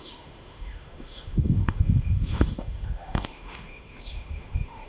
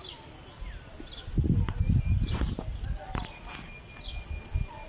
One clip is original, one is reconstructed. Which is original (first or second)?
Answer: second